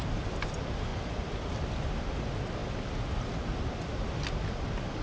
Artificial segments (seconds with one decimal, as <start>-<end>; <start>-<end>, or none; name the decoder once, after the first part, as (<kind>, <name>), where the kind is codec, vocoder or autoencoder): none